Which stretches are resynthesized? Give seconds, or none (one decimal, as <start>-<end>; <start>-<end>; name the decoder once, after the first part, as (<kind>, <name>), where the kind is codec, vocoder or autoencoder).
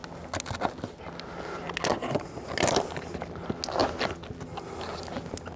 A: 1.9-2.5 (vocoder, Vocos)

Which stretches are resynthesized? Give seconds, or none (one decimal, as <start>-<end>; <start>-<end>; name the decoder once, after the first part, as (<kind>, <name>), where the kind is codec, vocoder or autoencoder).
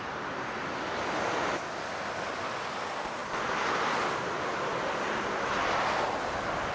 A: none